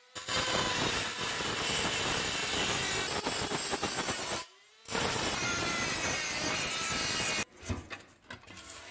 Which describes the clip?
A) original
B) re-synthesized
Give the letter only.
A